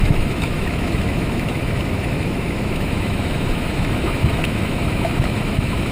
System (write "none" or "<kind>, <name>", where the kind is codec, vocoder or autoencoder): autoencoder, DAC-VAE